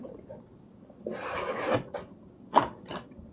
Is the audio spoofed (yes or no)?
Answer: no